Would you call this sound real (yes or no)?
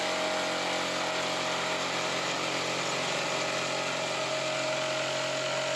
yes